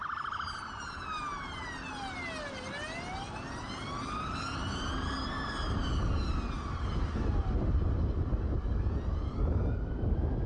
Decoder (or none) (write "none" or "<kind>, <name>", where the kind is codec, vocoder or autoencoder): none